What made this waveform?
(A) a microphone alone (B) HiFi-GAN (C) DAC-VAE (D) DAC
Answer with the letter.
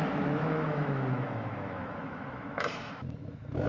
C